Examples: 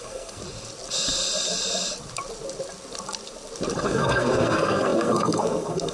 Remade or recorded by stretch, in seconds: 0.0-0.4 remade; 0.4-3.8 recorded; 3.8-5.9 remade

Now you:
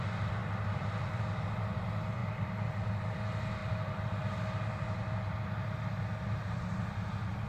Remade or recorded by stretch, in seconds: 0.0-0.4 recorded; 0.4-1.4 remade; 1.4-2.2 recorded; 2.2-3.2 remade; 3.2-3.6 recorded; 3.6-4.3 remade; 4.3-7.5 recorded

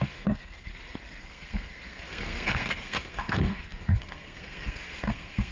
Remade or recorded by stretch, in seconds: 0.0-0.7 remade; 0.7-1.2 recorded; 1.2-5.5 remade

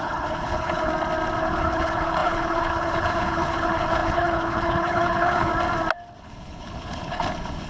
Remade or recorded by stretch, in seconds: 0.0-0.9 remade; 0.9-1.4 recorded; 1.4-5.5 remade; 5.5-6.2 recorded; 6.2-7.7 remade

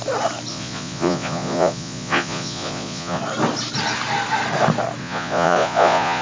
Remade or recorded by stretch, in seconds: 0.0-0.5 recorded; 0.5-3.2 remade; 3.2-5.0 recorded; 5.0-6.2 remade

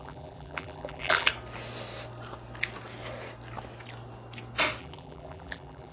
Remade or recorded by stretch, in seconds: 0.0-1.3 remade; 1.3-4.8 recorded; 4.8-5.9 remade

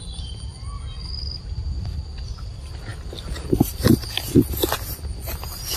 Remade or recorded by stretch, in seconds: 0.0-5.8 recorded

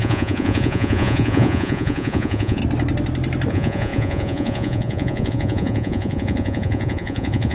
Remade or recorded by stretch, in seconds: 0.0-2.6 remade; 2.6-3.5 recorded; 3.5-7.5 remade